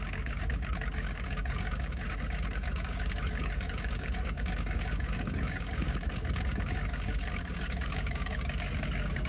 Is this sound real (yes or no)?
no